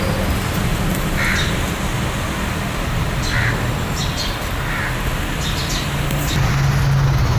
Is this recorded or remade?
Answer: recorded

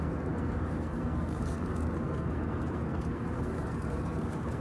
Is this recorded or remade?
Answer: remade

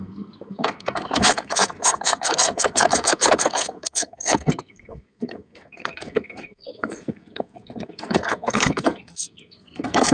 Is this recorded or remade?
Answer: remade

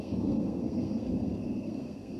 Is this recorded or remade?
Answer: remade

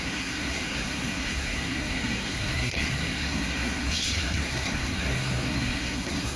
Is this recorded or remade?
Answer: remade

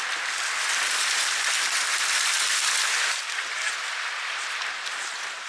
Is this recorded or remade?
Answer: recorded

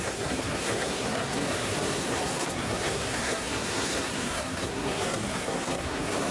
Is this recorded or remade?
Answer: remade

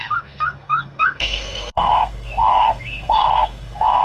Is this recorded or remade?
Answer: remade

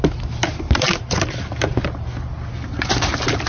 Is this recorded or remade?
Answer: recorded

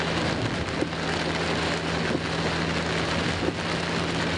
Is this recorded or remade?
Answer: recorded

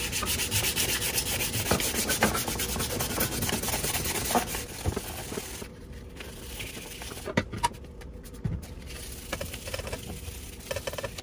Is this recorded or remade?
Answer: recorded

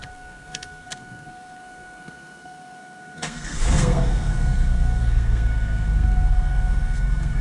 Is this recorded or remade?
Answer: remade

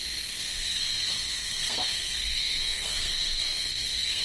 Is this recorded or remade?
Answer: remade